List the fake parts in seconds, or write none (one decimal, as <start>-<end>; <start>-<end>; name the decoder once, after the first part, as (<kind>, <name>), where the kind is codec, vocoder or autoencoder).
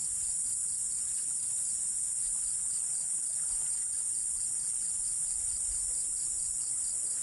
none